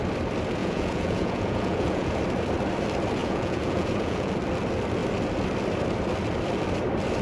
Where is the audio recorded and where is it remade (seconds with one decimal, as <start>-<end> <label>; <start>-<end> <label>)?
0.0-0.6 recorded; 0.6-2.2 remade; 2.2-3.2 recorded; 3.2-4.3 remade; 4.3-7.2 recorded